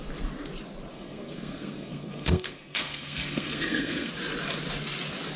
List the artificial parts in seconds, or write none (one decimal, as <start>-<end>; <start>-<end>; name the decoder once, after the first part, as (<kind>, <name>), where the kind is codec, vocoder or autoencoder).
0.9-4.1 (codec, SNAC)